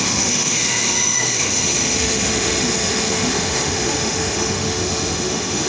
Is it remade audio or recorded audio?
remade